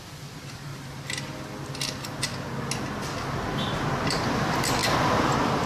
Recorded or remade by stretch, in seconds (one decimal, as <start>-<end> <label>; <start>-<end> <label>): 0.0-0.7 remade; 0.7-4.1 recorded; 4.1-4.8 remade; 4.8-5.3 recorded; 5.3-5.7 remade